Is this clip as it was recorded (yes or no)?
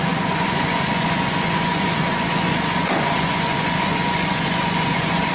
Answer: no